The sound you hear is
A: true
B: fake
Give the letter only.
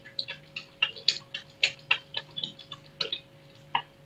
A